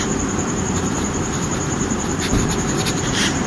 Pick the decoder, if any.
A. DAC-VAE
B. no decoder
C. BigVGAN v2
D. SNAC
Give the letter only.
C